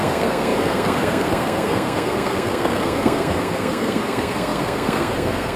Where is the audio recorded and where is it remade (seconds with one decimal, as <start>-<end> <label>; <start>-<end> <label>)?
0.0-5.6 remade